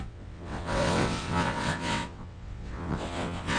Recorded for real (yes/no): no